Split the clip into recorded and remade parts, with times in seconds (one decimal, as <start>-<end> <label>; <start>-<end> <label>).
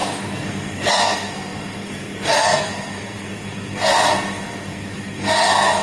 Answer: 0.0-5.8 remade